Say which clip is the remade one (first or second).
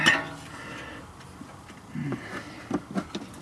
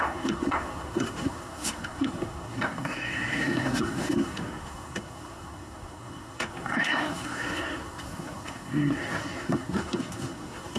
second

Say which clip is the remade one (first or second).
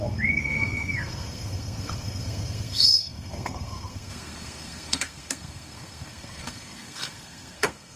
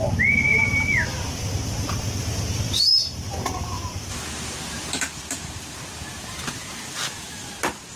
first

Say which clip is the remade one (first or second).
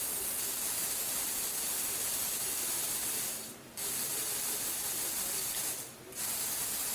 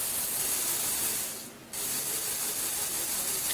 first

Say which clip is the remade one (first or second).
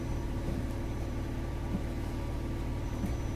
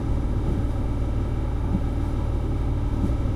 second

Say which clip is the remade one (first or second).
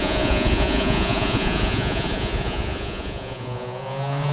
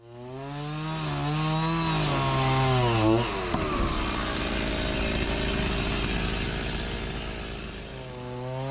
first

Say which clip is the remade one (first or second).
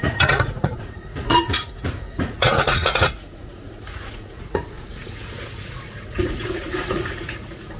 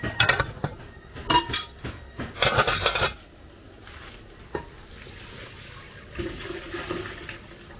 first